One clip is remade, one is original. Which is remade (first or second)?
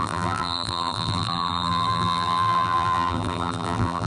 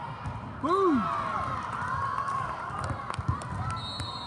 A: first